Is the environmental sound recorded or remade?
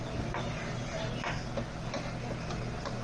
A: recorded